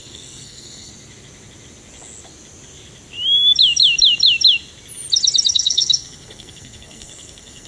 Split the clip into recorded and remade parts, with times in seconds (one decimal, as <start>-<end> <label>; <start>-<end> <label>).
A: 0.0-0.9 remade; 0.9-5.5 recorded; 5.5-7.7 remade